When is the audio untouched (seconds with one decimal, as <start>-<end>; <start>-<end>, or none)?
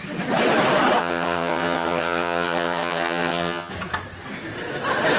0.0-1.0; 3.7-5.2